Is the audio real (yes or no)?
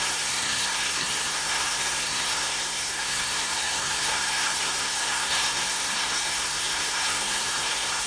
no